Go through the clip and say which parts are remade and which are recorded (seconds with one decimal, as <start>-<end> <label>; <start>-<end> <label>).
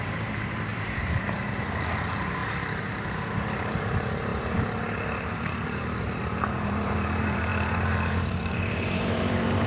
0.0-2.4 remade; 2.4-3.3 recorded; 3.3-9.7 remade